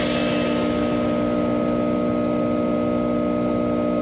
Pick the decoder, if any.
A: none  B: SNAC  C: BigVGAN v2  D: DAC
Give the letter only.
A